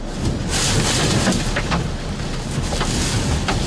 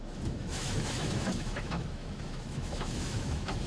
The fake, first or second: second